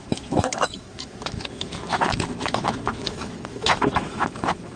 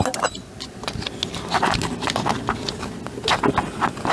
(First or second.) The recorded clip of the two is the second